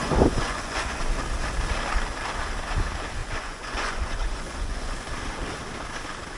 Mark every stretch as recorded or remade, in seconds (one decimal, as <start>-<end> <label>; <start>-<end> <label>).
0.0-1.0 remade; 1.0-3.2 recorded; 3.2-5.1 remade; 5.1-6.4 recorded